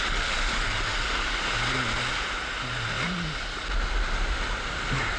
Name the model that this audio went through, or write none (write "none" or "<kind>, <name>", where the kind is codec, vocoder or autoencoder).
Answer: none